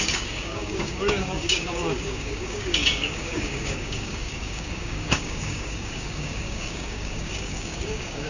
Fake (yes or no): yes